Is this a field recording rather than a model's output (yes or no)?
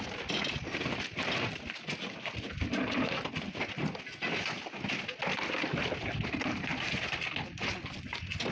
yes